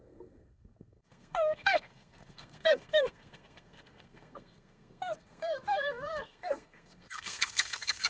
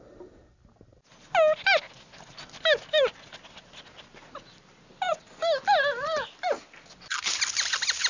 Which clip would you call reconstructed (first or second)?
first